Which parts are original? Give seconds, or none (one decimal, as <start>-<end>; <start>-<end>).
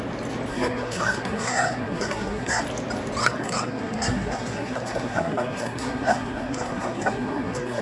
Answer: 0.0-0.5; 2.6-3.2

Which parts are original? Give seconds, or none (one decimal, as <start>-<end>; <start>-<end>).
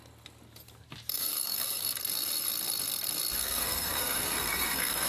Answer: 0.0-1.1; 2.0-3.4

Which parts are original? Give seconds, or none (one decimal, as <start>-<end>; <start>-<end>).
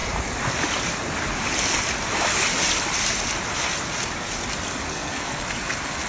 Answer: 0.0-4.9; 5.4-6.1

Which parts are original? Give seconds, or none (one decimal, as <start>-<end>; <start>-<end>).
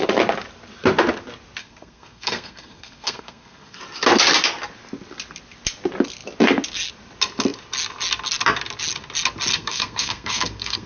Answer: 0.0-1.6; 3.8-9.5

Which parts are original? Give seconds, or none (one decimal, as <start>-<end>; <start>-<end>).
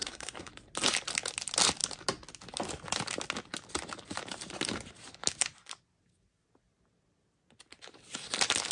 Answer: 0.5-8.7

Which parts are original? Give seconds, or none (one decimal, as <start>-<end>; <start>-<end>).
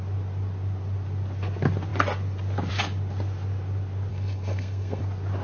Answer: 0.0-4.1; 5.0-5.4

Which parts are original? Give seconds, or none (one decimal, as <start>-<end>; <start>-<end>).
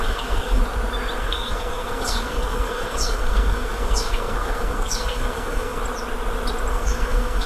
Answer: 0.6-1.2; 5.8-6.7